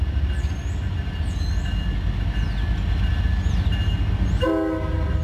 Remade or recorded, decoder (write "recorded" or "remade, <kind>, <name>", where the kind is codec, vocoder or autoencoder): recorded